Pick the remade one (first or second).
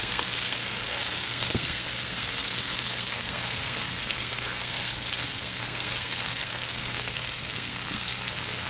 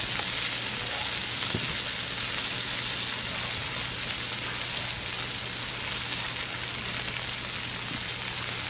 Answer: first